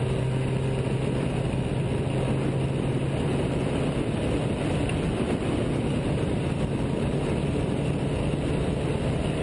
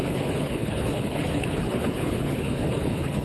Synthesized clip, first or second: second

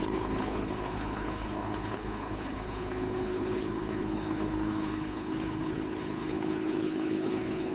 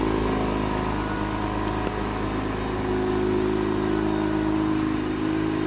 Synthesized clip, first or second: first